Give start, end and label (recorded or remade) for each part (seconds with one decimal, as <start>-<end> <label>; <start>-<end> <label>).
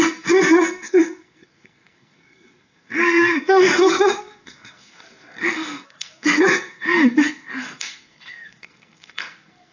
0.0-9.7 remade